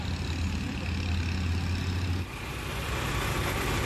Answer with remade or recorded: recorded